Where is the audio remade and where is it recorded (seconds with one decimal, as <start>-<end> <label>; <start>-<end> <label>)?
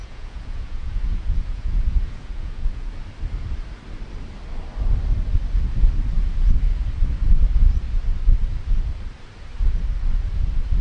0.0-2.9 remade; 2.9-10.8 recorded